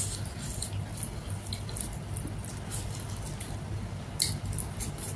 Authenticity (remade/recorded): recorded